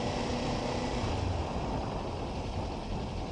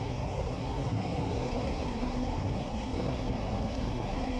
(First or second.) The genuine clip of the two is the first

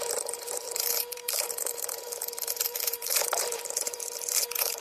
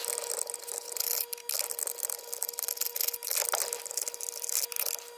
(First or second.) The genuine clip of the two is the second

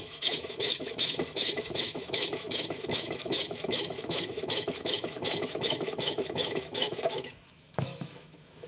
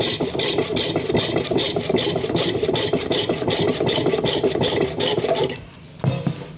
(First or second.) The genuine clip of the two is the second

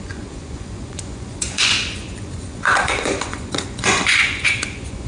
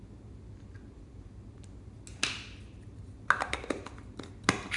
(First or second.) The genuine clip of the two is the second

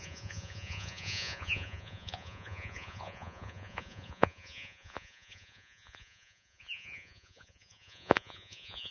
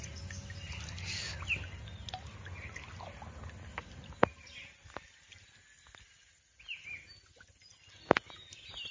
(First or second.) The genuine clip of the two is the second